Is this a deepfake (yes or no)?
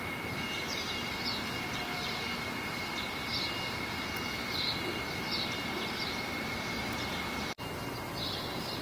no